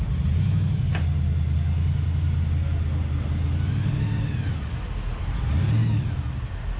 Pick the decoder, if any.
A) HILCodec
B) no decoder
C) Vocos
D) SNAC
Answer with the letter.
B